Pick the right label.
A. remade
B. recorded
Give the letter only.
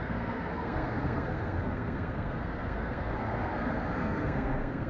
A